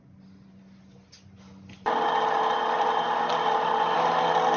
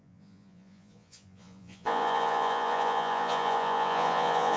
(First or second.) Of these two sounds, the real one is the first